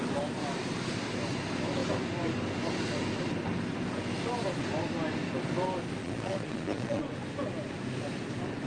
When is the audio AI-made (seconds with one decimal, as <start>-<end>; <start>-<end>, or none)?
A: 6.0-7.0